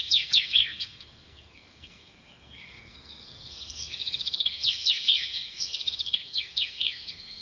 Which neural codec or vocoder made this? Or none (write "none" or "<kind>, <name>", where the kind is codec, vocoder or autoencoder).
codec, SNAC